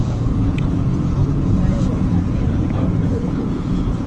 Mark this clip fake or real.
fake